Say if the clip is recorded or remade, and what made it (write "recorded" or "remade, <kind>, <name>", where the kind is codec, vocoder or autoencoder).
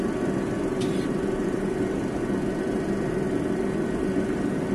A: recorded